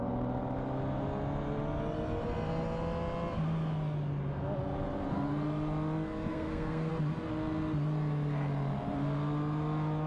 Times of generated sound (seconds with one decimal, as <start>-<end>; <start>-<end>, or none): 6.3-6.9